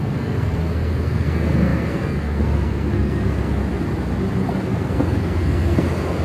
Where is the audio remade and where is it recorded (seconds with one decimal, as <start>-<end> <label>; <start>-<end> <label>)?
0.0-3.6 remade; 3.6-4.5 recorded; 4.5-6.2 remade